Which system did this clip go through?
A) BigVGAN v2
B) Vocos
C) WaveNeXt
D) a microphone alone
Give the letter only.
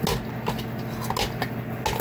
D